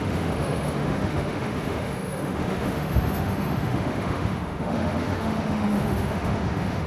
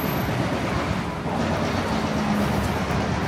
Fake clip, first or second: first